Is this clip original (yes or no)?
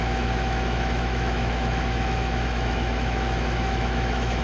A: no